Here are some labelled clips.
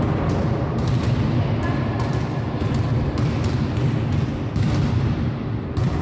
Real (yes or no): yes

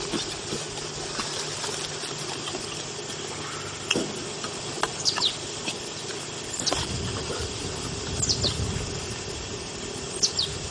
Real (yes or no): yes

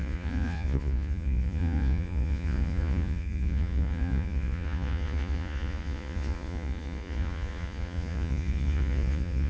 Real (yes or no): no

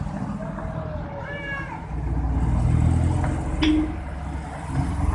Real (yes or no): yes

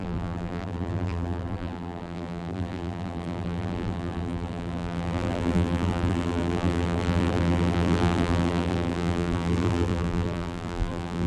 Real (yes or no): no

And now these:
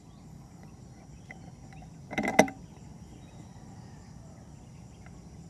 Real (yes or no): yes